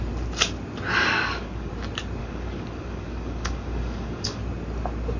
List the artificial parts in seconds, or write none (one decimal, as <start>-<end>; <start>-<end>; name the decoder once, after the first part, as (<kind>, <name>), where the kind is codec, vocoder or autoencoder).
1.0-1.7 (codec, DAC); 2.2-4.4